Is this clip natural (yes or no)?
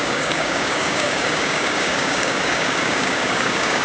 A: no